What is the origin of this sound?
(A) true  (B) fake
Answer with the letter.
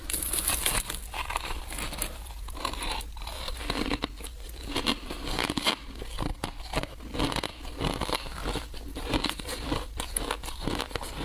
A